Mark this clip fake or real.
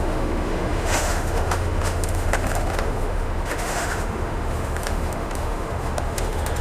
fake